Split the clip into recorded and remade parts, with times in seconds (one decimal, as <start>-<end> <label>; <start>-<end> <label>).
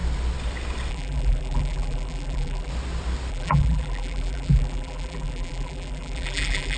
0.0-0.9 recorded; 0.9-2.7 remade; 2.7-3.3 recorded; 3.3-6.8 remade